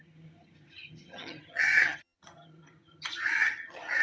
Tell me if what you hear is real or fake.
fake